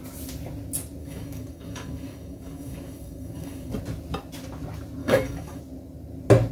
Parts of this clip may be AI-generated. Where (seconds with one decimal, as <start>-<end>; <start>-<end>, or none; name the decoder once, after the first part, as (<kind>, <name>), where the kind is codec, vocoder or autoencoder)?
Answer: 1.0-3.7 (codec, DAC); 5.0-5.6